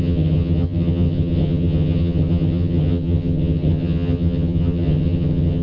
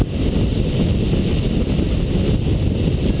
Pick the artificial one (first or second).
first